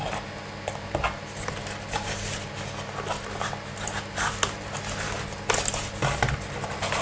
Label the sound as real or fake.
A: real